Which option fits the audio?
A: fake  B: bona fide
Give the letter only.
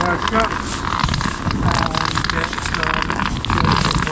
B